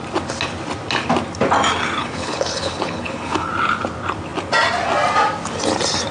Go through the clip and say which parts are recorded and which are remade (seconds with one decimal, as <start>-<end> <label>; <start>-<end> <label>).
0.0-2.0 recorded; 2.0-3.5 remade; 3.5-6.1 recorded